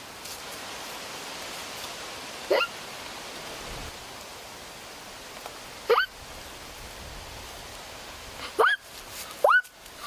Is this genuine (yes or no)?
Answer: yes